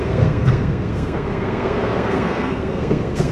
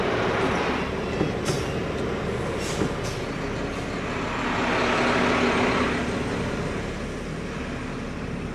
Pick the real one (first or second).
second